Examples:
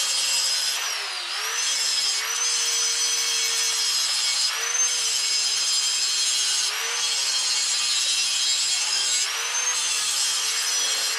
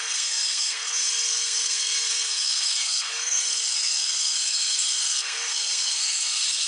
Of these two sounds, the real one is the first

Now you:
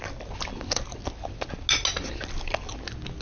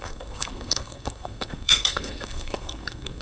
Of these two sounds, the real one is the first